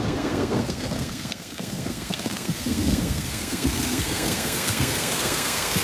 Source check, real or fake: fake